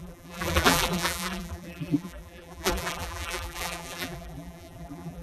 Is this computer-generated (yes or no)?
yes